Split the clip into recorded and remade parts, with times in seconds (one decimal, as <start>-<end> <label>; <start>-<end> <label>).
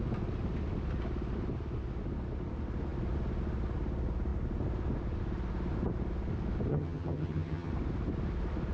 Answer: 0.0-6.7 recorded; 6.7-7.7 remade; 7.7-8.7 recorded